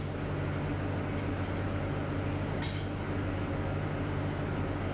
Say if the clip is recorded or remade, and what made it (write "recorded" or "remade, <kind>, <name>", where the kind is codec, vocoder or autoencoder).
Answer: recorded